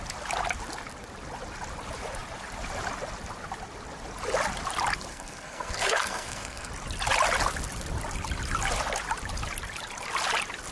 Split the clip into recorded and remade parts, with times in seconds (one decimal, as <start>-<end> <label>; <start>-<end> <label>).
0.0-5.1 recorded; 5.1-6.7 remade; 6.7-10.7 recorded